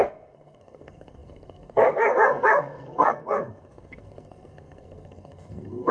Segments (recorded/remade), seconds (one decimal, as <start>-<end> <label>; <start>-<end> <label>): 0.0-5.9 remade